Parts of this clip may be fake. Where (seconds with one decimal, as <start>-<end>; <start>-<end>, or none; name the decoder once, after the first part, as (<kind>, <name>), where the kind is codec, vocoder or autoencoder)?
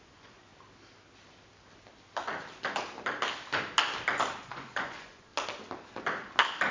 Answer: 0.0-0.5 (vocoder, Vocos); 4.4-5.3